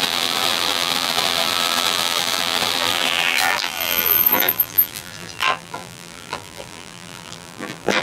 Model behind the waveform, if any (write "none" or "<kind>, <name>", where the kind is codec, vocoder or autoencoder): vocoder, BigVGAN v2